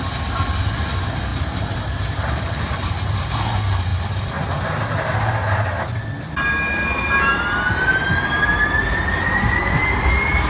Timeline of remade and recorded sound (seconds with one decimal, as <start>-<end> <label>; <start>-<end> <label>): 0.0-1.3 recorded; 1.3-2.4 remade; 2.4-10.5 recorded